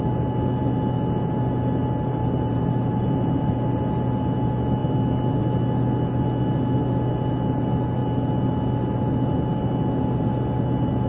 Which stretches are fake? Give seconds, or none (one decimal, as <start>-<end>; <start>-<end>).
2.2-3.8